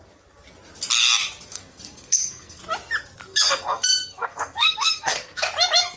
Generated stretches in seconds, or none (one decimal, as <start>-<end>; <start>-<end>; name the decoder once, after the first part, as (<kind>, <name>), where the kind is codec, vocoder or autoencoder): 1.5-2.6 (codec, SNAC); 3.3-5.4